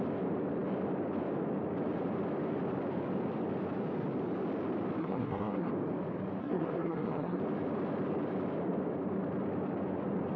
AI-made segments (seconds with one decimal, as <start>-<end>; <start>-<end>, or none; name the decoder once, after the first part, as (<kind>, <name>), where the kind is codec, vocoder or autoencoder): 5.0-5.7 (codec, SNAC); 6.4-7.4